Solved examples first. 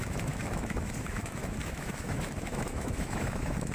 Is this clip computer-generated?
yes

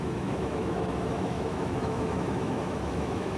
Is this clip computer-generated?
yes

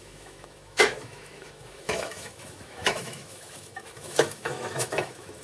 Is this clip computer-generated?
yes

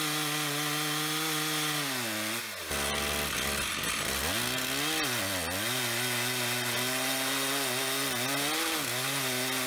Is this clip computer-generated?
no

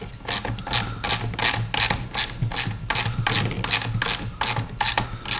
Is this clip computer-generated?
no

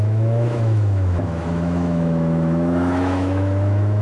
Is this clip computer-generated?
yes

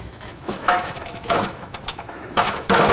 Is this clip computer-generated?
yes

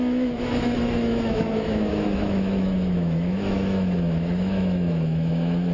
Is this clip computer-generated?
yes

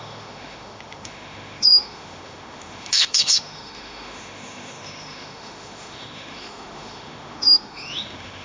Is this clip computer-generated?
yes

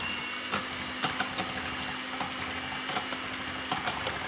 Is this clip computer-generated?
no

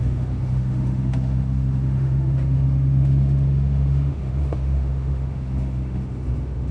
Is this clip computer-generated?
yes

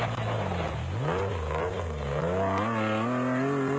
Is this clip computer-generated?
no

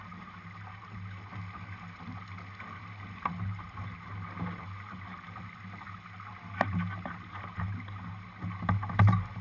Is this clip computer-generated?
no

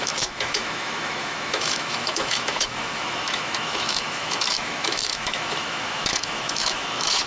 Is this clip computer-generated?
yes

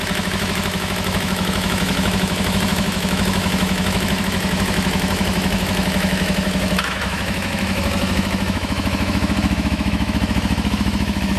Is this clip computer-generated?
yes